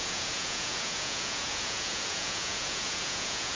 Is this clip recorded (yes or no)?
no